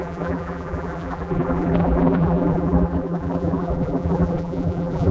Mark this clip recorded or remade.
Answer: remade